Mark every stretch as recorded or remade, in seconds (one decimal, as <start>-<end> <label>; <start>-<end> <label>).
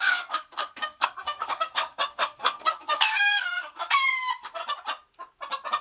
0.0-4.6 remade; 4.6-5.8 recorded